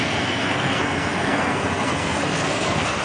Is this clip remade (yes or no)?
yes